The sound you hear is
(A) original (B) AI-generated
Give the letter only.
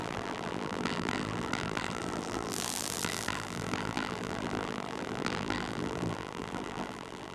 B